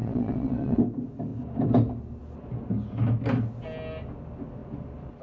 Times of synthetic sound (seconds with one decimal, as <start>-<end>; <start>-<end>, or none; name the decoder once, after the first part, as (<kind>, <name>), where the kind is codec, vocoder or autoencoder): 0.0-0.8 (vocoder, WaveNeXt)